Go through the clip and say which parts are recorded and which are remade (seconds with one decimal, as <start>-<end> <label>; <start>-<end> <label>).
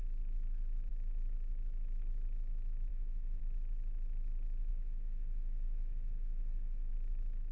0.0-2.9 recorded; 2.9-3.4 remade; 3.4-4.7 recorded; 4.7-6.9 remade; 6.9-7.5 recorded